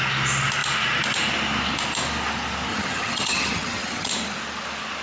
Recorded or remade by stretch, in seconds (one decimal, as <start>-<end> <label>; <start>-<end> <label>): 0.0-2.7 recorded; 2.7-4.1 remade; 4.1-5.0 recorded